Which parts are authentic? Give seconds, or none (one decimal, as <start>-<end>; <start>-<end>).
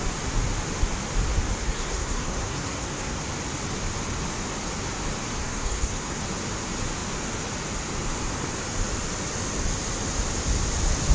0.0-1.6; 3.2-5.4; 6.2-11.1